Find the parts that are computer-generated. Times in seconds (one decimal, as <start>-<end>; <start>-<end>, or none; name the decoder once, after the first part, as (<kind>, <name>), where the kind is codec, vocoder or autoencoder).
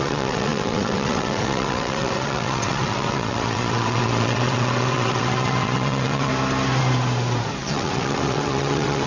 0.0-6.3 (vocoder, WaveNeXt); 7.6-9.1